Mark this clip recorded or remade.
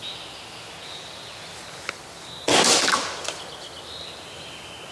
recorded